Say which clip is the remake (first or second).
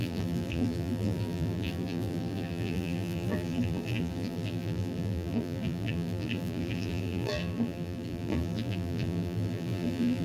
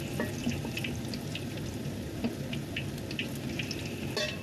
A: first